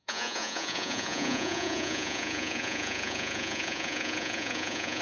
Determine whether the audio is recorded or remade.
remade